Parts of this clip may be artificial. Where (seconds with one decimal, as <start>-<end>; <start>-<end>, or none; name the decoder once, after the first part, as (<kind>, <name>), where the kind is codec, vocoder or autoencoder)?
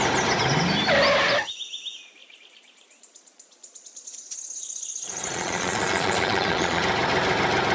2.2-6.8 (vocoder, Vocos)